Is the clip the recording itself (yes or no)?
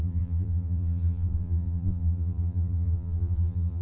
no